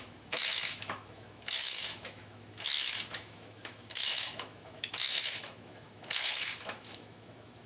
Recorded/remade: remade